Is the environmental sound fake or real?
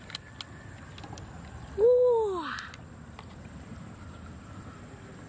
real